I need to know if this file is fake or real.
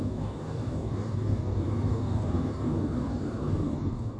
fake